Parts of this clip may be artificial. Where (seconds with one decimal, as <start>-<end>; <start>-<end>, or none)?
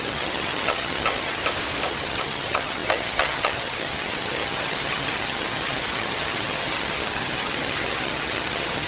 0.0-1.4; 1.9-8.9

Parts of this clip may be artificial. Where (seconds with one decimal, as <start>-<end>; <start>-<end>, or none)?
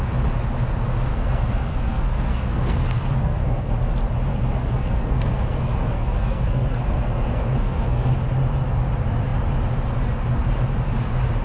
1.1-3.7; 4.3-8.1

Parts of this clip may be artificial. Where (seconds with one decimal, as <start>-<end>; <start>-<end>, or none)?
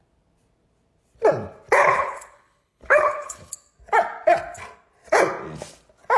1.8-3.5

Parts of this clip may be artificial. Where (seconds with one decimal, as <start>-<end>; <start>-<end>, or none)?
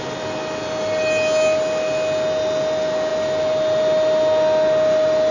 none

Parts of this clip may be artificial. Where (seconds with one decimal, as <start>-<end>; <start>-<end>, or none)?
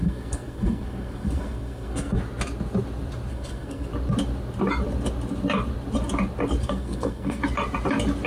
0.0-2.2; 3.3-3.9; 6.6-7.4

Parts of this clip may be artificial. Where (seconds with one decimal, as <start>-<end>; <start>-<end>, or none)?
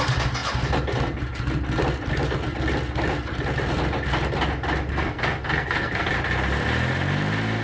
4.9-6.1